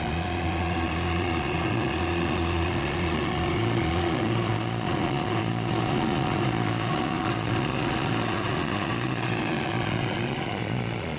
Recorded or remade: remade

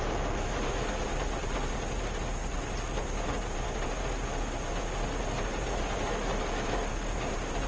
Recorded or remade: recorded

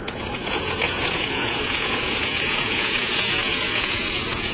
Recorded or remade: remade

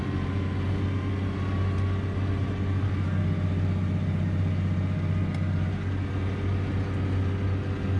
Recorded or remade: recorded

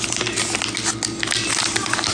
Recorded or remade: recorded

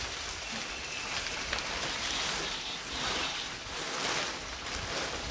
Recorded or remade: recorded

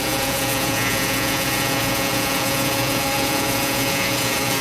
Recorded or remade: remade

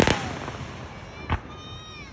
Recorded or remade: recorded